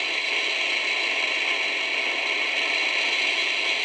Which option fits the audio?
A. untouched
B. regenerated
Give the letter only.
A